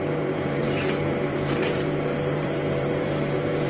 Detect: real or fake fake